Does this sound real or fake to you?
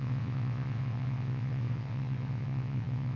fake